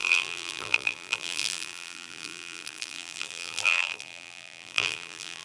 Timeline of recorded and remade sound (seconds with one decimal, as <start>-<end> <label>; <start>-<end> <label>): 0.0-5.4 remade